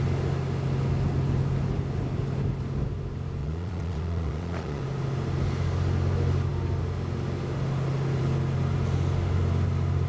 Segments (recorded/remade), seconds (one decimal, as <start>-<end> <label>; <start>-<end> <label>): 0.0-3.4 recorded; 3.4-4.8 remade; 4.8-10.1 recorded